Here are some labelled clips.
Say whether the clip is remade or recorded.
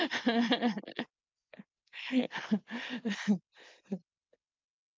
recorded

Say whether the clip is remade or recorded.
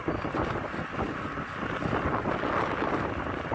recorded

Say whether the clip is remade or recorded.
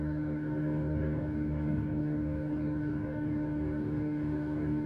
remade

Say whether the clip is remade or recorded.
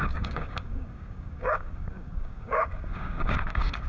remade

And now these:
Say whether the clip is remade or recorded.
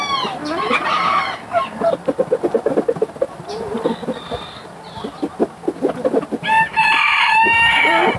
recorded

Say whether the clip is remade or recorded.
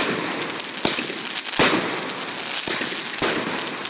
recorded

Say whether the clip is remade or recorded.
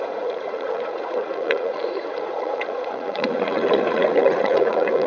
remade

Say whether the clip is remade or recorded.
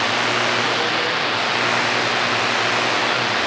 recorded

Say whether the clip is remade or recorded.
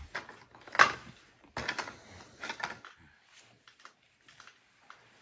recorded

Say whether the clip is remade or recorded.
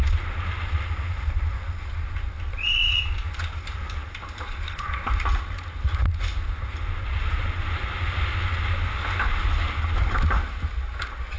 recorded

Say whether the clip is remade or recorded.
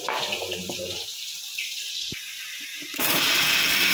remade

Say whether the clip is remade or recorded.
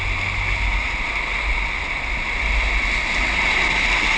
recorded